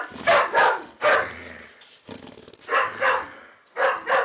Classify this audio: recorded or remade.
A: recorded